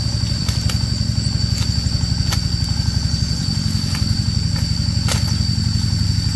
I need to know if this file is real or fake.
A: real